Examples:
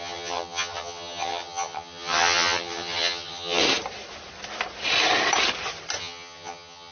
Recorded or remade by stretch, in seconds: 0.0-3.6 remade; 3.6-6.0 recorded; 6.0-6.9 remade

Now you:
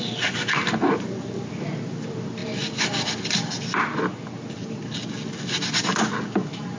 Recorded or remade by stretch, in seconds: 0.0-6.8 recorded

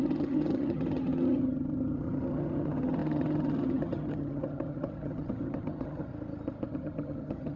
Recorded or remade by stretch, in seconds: 0.0-6.1 remade; 6.1-6.7 recorded; 6.7-7.6 remade

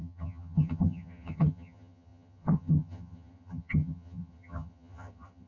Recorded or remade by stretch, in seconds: 0.0-5.5 remade

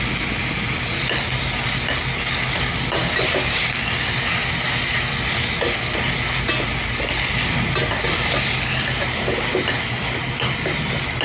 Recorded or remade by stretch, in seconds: 0.0-11.2 recorded

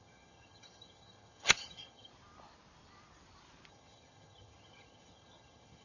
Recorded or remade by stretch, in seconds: 0.0-2.1 remade; 2.1-3.7 recorded; 3.7-5.8 remade